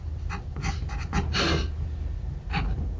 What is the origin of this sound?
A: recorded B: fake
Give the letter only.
A